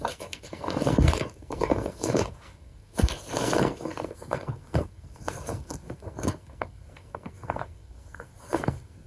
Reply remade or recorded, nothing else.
remade